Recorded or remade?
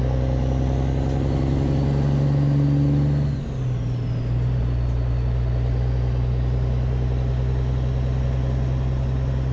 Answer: recorded